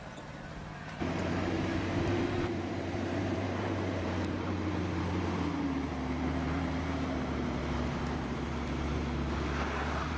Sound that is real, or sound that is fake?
fake